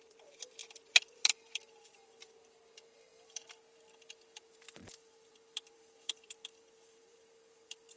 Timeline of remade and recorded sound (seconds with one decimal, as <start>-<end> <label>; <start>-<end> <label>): 0.0-8.0 remade